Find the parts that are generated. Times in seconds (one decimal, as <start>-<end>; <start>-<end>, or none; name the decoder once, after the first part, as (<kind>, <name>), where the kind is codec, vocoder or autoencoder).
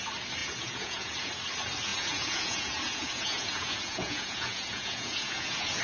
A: 0.4-1.3 (vocoder, Vocos); 1.9-5.8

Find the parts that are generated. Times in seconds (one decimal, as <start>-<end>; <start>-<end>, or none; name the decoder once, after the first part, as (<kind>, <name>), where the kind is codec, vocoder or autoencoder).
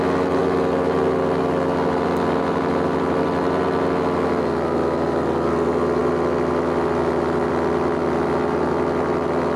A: none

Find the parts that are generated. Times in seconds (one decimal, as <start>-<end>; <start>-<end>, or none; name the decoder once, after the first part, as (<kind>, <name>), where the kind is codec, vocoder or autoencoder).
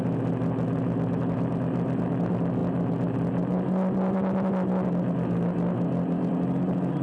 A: none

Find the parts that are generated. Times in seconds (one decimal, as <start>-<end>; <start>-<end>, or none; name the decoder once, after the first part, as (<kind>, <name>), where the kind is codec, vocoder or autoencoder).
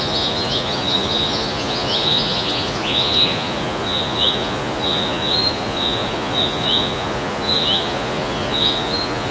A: 0.0-9.3 (vocoder, Vocos)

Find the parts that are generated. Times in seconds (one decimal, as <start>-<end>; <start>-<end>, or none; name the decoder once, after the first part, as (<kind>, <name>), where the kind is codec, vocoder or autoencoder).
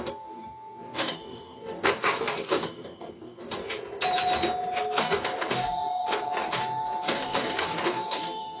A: 0.0-3.6 (codec, DAC); 5.0-8.6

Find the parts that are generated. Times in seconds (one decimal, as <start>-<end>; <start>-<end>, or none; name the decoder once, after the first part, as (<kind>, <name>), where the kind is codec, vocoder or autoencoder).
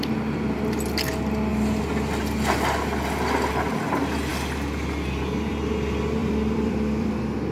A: 6.2-7.1 (vocoder, BigVGAN v2)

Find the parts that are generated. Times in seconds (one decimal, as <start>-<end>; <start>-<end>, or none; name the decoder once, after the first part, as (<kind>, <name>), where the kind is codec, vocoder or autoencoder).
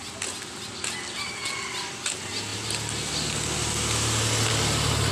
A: none